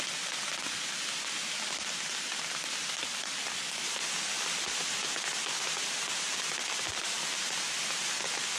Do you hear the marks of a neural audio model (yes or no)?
no